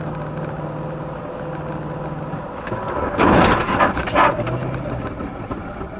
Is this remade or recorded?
recorded